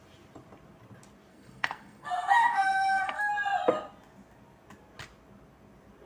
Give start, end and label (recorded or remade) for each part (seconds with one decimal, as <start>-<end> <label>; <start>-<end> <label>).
0.0-1.3 recorded; 1.3-3.3 remade; 3.3-6.1 recorded